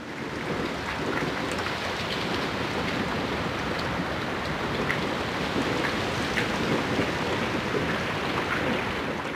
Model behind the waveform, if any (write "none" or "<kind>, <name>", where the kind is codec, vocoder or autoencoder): none